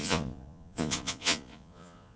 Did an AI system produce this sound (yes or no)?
yes